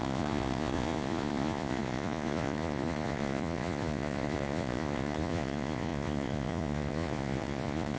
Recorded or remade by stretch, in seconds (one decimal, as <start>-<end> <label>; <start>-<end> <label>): 0.0-8.0 remade